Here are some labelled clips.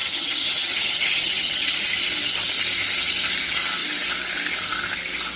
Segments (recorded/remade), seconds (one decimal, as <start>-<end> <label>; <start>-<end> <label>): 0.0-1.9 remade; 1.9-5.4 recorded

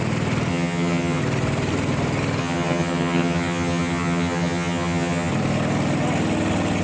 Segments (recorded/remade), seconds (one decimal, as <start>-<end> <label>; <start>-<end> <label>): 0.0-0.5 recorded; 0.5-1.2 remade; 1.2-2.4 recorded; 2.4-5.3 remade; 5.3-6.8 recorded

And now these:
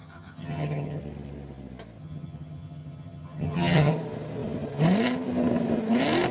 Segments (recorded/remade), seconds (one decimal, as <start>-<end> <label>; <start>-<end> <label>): 0.0-1.0 remade; 1.0-2.0 recorded; 2.0-3.9 remade; 3.9-6.3 recorded